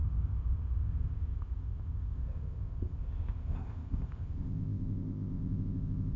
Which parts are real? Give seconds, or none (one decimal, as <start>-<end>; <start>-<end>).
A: none